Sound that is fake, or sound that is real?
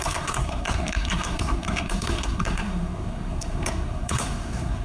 fake